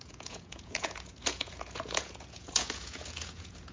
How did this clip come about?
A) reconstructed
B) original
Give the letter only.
A